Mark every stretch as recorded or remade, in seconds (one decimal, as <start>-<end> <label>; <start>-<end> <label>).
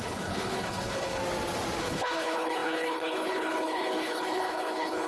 0.0-1.2 remade; 1.2-1.8 recorded; 1.8-5.1 remade